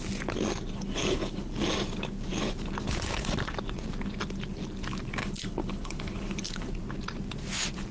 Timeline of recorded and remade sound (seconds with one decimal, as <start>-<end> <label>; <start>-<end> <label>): 0.0-0.7 recorded; 0.7-1.5 remade; 1.5-5.2 recorded; 5.2-6.7 remade; 6.7-7.9 recorded